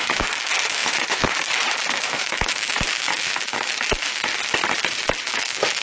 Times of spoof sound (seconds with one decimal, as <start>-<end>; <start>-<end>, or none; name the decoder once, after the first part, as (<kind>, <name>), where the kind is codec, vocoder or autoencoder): 0.0-4.3 (autoencoder, DAC-VAE); 5.2-5.8